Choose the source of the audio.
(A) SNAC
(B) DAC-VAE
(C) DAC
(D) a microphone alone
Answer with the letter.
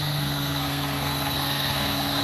A